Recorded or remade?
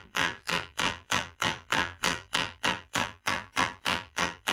remade